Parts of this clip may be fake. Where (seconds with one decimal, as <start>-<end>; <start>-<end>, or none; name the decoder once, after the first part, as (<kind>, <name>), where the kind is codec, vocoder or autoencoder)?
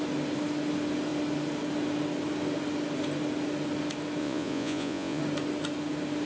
4.2-5.2 (vocoder, Vocos)